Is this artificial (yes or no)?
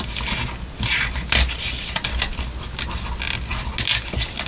no